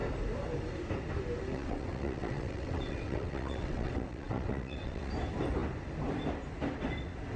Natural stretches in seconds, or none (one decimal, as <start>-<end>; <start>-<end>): 0.0-1.5; 5.1-7.4